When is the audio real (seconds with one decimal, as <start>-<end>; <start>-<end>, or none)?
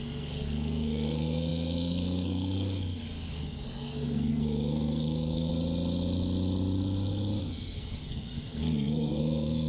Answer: 5.5-7.4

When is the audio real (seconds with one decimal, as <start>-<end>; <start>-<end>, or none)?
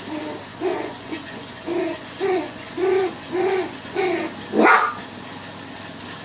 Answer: 0.0-0.5; 4.0-6.2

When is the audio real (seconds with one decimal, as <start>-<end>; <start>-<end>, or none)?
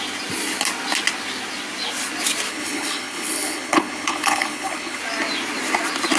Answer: 0.0-2.5; 5.0-6.2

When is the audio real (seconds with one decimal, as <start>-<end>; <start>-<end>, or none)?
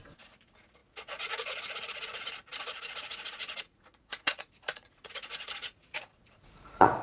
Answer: none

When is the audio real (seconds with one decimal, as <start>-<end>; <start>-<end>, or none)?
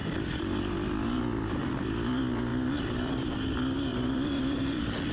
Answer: 0.6-1.3; 1.9-2.5; 3.4-3.9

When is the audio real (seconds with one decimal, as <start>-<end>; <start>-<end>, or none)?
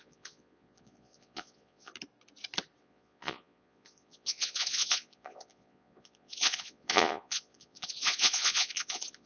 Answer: 1.9-2.8